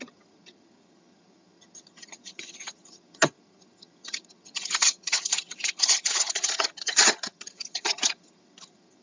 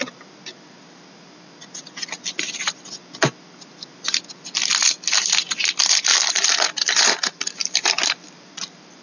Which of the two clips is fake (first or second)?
first